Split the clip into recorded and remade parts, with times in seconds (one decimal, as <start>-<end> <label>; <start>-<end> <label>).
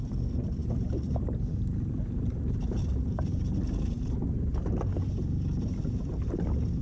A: 0.0-0.6 recorded; 0.6-4.7 remade; 4.7-6.8 recorded